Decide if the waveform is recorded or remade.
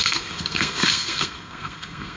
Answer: remade